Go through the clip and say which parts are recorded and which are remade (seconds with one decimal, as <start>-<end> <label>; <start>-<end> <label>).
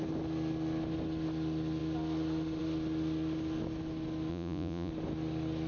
0.0-4.3 recorded; 4.3-4.9 remade; 4.9-5.7 recorded